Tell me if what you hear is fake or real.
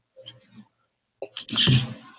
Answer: real